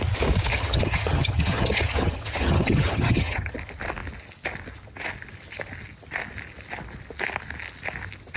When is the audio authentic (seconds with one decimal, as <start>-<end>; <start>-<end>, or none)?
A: 0.0-0.5; 3.5-8.4